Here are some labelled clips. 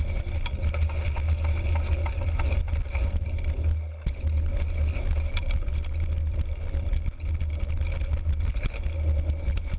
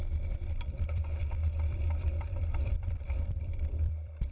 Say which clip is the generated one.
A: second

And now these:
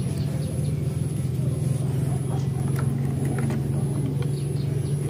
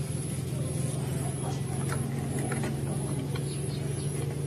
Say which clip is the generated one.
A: second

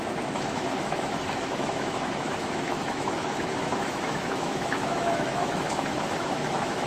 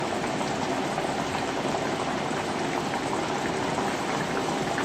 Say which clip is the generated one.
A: first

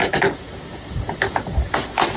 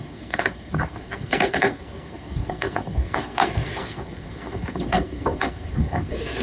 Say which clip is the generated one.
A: second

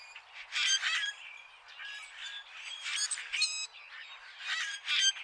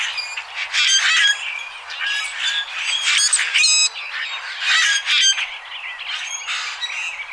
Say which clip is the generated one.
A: first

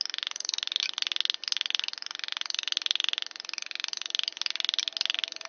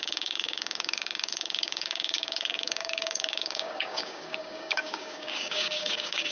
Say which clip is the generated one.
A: second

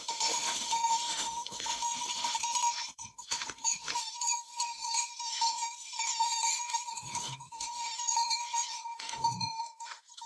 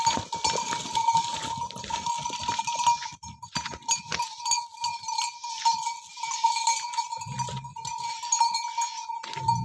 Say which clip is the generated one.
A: first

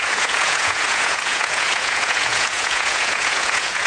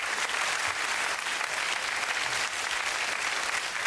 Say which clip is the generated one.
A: first